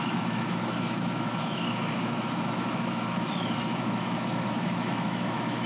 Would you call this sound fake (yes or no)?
yes